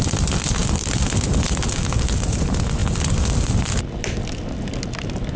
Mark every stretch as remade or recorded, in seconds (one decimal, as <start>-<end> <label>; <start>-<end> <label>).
0.0-5.4 recorded